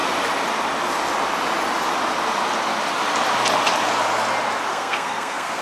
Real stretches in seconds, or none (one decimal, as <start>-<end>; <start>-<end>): 0.0-4.7